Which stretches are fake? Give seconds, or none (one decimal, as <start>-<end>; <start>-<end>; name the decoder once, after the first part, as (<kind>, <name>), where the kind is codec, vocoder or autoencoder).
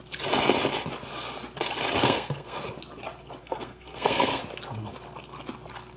2.0-2.6 (codec, SNAC); 3.4-4.4